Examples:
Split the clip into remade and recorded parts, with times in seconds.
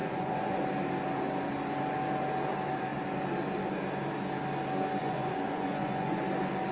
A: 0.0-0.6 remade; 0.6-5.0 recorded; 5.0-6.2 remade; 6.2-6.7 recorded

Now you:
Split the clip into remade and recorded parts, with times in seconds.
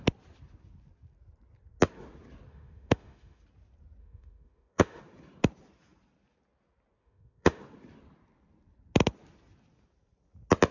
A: 0.0-2.5 recorded; 2.5-3.4 remade; 3.4-4.0 recorded; 4.0-5.0 remade; 5.0-7.0 recorded; 7.0-7.6 remade; 7.6-10.7 recorded